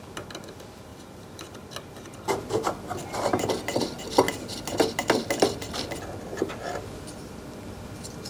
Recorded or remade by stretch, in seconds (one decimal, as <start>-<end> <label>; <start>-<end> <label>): 0.0-8.3 recorded

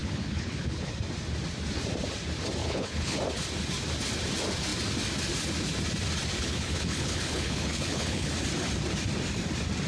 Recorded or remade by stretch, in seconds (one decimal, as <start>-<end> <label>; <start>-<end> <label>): 0.0-0.9 remade; 0.9-2.6 recorded; 2.6-3.2 remade; 3.2-6.4 recorded; 6.4-8.3 remade; 8.3-9.9 recorded

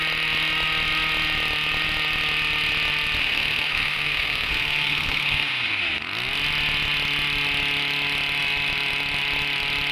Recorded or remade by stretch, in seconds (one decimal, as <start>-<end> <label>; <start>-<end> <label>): 0.0-3.2 recorded; 3.2-5.8 remade; 5.8-9.9 recorded